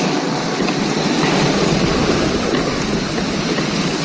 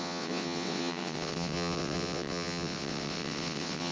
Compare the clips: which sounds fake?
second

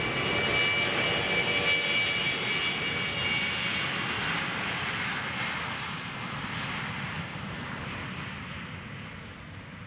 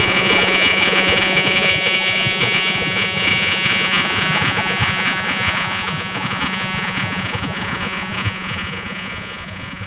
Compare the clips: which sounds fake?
second